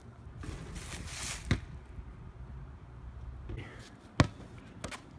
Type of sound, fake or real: real